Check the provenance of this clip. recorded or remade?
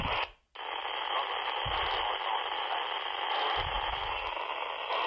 recorded